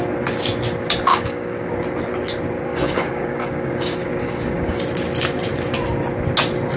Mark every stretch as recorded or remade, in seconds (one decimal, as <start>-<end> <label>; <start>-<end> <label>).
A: 0.0-1.1 recorded; 1.1-1.7 remade; 1.7-2.7 recorded; 2.7-4.8 remade; 4.8-6.8 recorded